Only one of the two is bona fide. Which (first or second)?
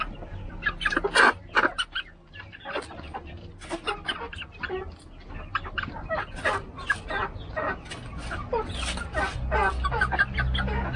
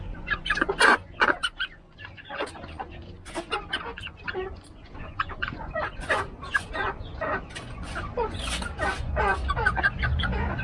first